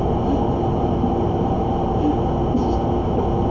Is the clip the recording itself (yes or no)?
yes